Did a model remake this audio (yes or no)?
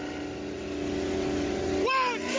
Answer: no